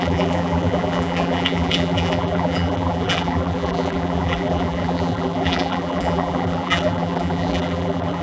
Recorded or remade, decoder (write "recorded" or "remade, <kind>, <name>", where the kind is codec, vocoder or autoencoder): remade, vocoder, BigVGAN v2